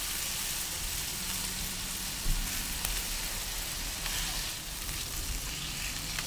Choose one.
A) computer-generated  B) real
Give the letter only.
A